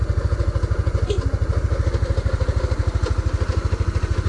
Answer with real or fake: real